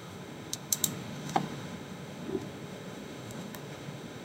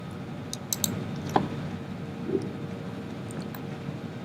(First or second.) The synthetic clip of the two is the first